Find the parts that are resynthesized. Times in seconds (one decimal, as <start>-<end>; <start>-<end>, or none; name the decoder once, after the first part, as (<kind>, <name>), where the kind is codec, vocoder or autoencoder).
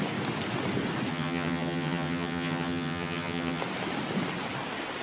1.1-3.6 (vocoder, HiFi-GAN)